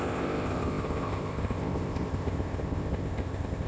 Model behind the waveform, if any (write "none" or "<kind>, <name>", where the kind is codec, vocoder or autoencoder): codec, ZipCodec